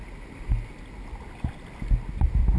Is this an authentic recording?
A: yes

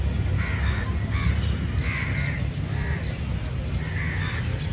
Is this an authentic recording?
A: yes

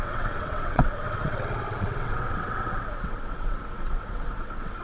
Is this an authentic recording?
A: no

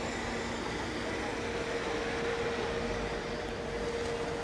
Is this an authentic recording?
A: yes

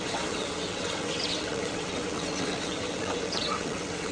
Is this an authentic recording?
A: no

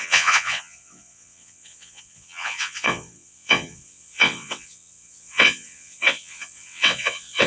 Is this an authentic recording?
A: no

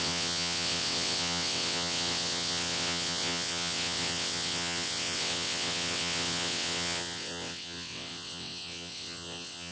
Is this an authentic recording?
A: no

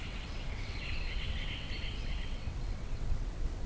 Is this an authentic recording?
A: no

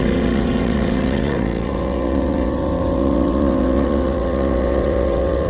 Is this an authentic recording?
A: no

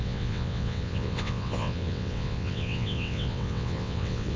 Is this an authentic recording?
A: no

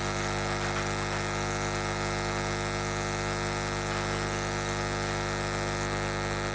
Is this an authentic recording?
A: yes